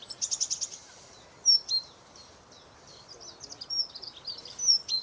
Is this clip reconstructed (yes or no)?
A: no